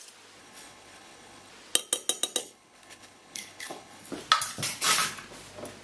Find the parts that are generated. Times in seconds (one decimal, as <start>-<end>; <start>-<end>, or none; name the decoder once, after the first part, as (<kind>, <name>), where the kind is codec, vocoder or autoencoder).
0.4-1.5 (codec, HILCodec); 2.4-4.1